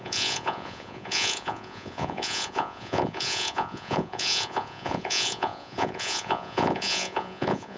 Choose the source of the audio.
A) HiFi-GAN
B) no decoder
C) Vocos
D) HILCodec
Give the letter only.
C